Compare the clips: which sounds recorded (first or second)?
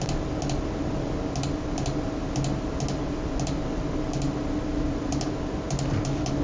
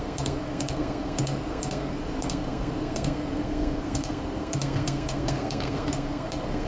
first